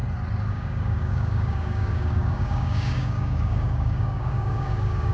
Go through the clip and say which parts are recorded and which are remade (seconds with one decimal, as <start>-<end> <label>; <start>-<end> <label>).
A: 0.0-0.5 recorded; 0.5-5.1 remade